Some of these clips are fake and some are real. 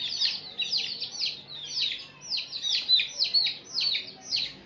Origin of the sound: real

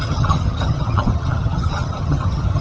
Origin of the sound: fake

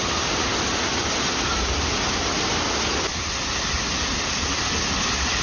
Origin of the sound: real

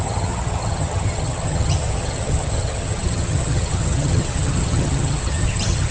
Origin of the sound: fake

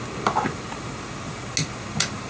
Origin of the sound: real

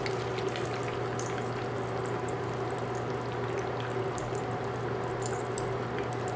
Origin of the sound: real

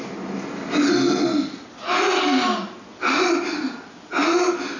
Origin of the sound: real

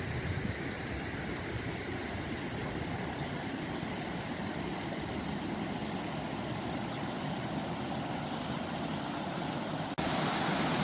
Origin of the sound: real